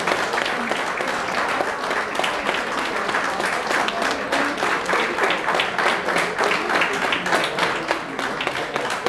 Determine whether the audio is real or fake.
real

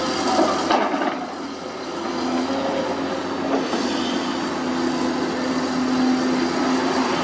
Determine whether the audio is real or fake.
real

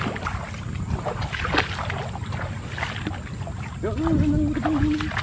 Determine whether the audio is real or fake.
real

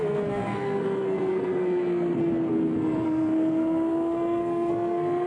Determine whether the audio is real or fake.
fake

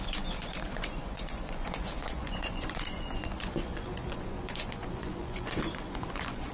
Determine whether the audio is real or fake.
fake